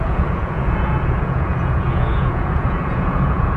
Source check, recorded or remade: remade